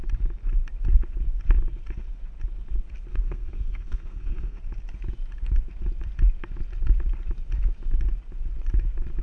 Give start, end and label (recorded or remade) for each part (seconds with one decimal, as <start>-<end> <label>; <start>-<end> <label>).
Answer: 0.0-3.1 recorded; 3.1-4.6 remade; 4.6-9.2 recorded